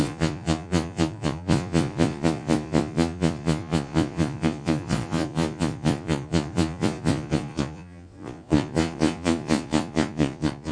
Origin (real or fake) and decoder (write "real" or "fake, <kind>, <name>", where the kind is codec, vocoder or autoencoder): fake, vocoder, Vocos